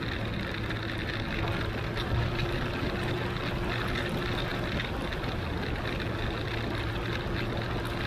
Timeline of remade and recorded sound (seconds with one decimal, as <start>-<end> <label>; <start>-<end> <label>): 0.0-8.1 recorded